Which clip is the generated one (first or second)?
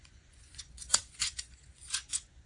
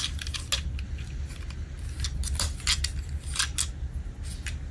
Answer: first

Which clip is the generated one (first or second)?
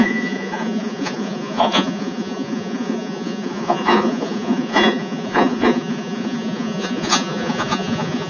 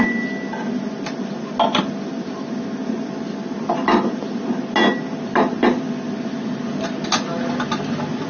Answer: first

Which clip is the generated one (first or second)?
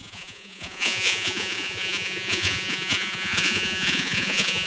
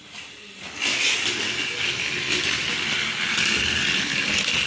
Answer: first